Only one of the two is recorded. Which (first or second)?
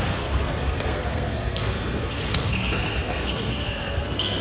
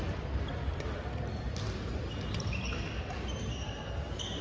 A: second